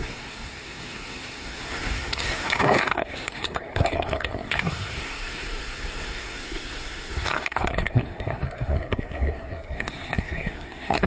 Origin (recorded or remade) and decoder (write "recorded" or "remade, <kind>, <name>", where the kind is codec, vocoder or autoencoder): remade, codec, SNAC